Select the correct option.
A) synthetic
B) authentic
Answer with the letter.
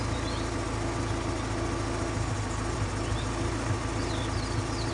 B